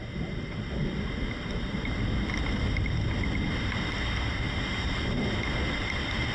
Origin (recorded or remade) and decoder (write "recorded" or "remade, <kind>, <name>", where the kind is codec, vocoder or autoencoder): recorded